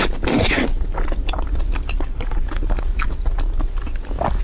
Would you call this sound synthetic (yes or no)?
no